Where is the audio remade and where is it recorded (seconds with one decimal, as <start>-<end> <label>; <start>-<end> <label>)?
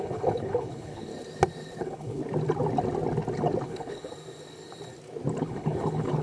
0.0-1.1 remade; 1.1-1.8 recorded; 1.8-2.2 remade; 2.2-3.6 recorded; 3.6-4.1 remade; 4.1-5.4 recorded; 5.4-6.2 remade